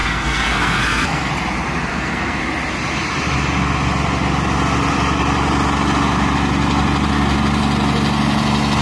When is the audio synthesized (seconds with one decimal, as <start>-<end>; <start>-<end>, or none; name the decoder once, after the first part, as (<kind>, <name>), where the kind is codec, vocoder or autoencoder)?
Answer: 0.0-1.3 (codec, SNAC); 1.9-2.4